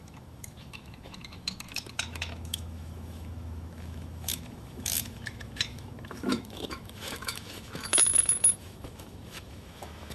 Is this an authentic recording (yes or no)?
no